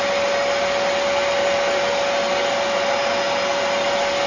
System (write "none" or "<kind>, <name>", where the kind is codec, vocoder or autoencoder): none